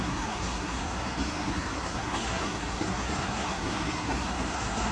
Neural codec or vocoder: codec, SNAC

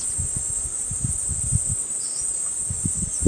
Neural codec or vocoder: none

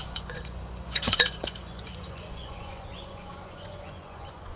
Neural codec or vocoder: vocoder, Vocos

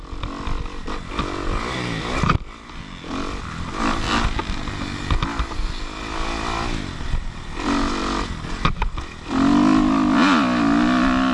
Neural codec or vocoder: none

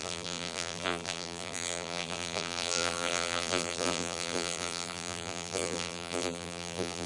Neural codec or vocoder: vocoder, BigVGAN v2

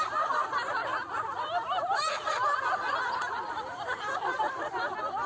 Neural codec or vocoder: vocoder, BigVGAN v2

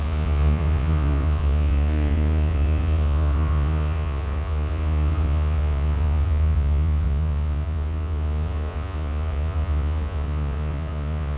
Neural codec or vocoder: vocoder, Vocos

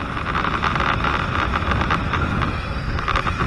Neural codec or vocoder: none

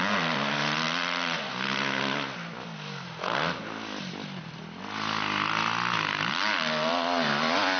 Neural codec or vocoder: none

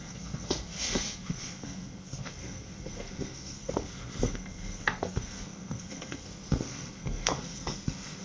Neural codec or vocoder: codec, SNAC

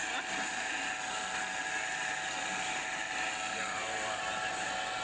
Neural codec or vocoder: none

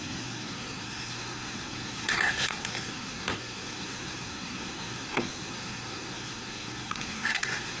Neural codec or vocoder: codec, SNAC